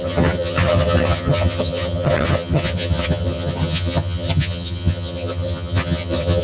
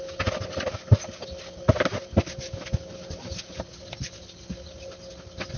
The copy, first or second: first